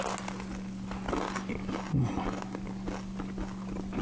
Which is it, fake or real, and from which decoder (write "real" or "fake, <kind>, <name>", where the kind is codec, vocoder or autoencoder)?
real